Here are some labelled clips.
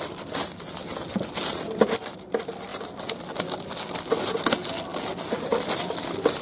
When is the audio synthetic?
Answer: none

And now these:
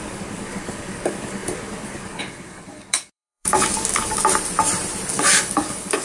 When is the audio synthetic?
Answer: 0.0-4.2 (codec, DAC); 5.1-6.0